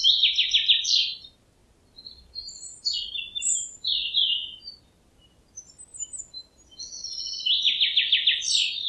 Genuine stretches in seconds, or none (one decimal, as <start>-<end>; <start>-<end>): 0.0-8.9